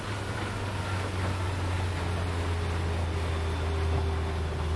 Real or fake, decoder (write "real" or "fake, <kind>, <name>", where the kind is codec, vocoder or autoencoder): real